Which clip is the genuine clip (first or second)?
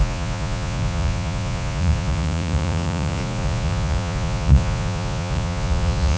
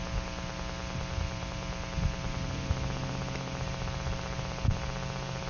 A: second